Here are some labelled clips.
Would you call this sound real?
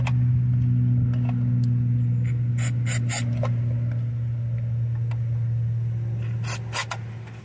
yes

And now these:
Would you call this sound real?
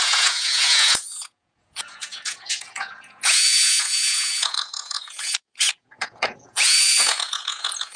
no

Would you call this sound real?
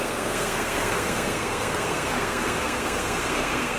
no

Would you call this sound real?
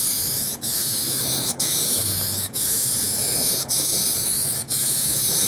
no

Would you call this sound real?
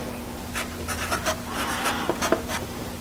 yes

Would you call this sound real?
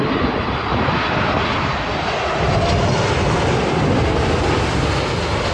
yes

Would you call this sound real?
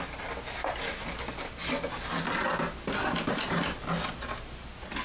yes